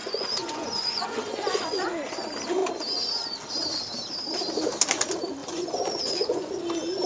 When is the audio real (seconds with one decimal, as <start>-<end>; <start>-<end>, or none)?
1.9-5.4; 6.5-7.1